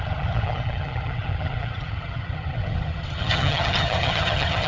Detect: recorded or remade remade